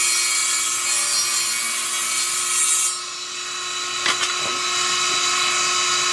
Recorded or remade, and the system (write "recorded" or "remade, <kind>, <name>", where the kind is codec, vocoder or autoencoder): recorded